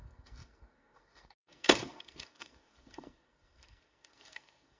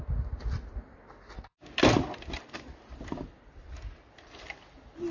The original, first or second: second